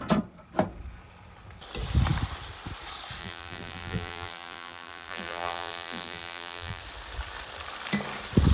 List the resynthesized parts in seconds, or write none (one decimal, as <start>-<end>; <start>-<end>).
3.2-6.8